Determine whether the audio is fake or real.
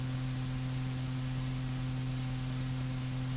real